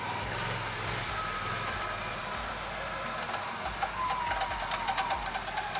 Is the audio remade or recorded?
recorded